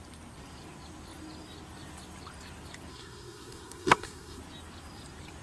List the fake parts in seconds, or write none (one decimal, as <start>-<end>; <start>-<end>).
2.9-4.4